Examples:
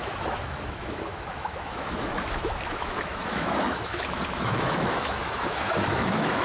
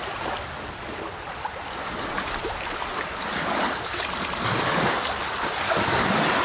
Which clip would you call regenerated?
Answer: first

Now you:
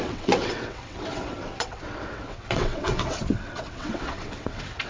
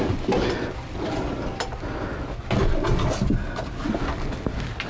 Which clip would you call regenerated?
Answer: first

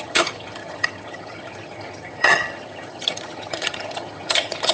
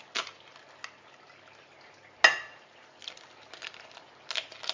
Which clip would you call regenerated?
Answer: first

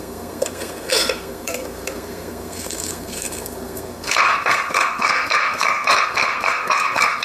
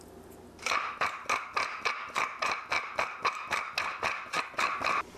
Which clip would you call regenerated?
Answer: first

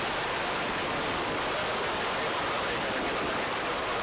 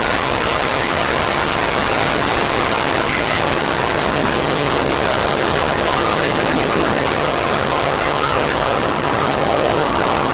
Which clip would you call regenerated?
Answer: second